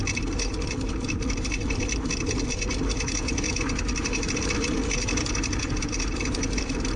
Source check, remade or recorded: recorded